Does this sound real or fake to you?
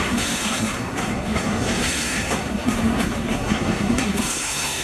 fake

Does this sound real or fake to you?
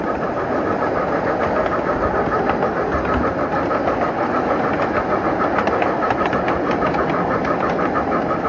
real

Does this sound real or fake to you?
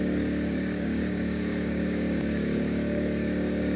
fake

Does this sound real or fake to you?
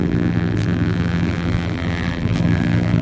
fake